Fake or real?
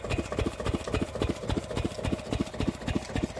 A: real